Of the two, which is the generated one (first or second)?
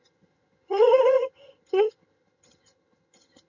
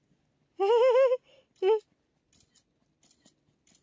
first